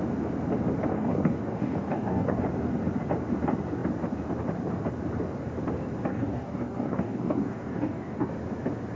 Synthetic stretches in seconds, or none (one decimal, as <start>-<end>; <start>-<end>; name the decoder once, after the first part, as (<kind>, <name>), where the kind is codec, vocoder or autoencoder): 0.9-2.4 (codec, DAC); 6.1-8.3